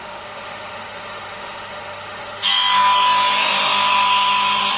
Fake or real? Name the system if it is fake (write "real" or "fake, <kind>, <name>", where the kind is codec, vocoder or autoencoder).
fake, autoencoder, DAC-VAE